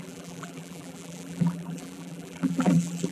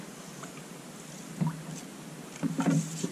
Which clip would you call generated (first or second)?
first